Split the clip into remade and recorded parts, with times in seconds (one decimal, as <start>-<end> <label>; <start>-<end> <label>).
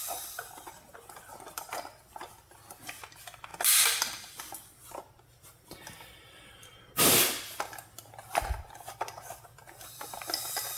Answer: 0.0-10.8 recorded